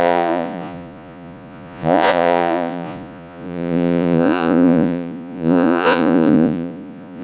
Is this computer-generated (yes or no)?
yes